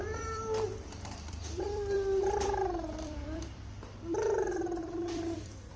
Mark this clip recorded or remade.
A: remade